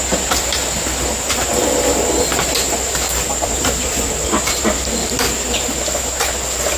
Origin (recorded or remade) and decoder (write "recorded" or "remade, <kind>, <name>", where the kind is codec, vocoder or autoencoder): recorded